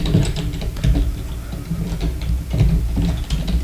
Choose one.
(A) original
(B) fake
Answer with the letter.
A